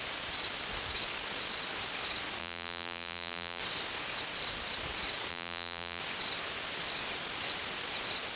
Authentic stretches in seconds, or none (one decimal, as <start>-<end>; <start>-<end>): 0.0-2.4; 3.6-5.3; 6.0-8.4